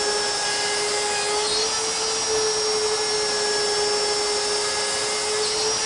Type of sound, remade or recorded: recorded